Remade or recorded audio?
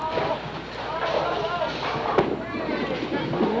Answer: recorded